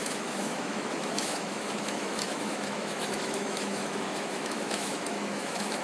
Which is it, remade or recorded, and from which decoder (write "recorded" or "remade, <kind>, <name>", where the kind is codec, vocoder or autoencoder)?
remade, autoencoder, DAC-VAE